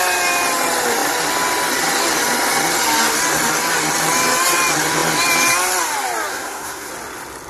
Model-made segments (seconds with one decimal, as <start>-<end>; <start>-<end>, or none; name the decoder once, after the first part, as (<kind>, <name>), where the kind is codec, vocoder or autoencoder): 6.3-6.9 (codec, SNAC)